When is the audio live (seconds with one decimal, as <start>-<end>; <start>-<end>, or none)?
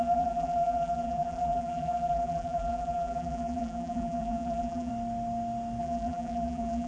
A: 4.9-5.8